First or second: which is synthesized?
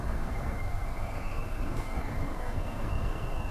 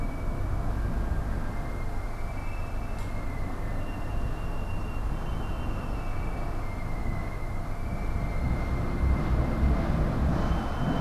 first